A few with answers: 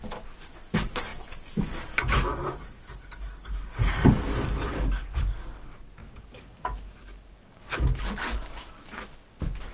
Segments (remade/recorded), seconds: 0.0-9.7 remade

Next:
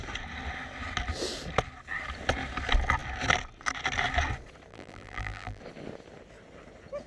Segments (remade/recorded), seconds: 0.0-4.7 recorded; 4.7-5.6 remade; 5.6-7.1 recorded

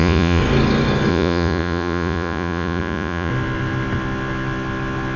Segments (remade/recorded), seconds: 0.0-0.4 remade; 0.4-1.1 recorded; 1.1-3.3 remade; 3.3-5.2 recorded

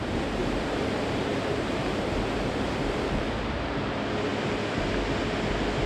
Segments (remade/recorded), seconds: 0.0-0.4 recorded; 0.4-3.9 remade; 3.9-5.9 recorded